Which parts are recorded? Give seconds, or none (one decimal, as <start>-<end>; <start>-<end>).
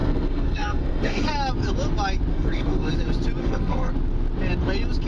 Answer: 1.3-2.3; 2.9-3.4; 3.9-5.1